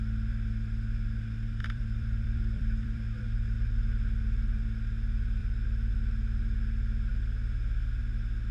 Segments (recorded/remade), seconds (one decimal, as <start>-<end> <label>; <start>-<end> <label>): 0.0-1.6 recorded; 1.6-3.2 remade; 3.2-5.4 recorded; 5.4-5.9 remade; 5.9-8.5 recorded